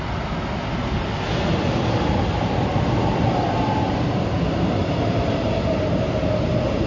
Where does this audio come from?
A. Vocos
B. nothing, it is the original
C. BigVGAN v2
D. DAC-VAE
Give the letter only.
B